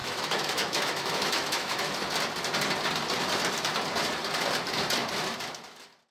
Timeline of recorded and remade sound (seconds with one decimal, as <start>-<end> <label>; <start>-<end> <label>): 0.0-1.9 remade; 1.9-6.1 recorded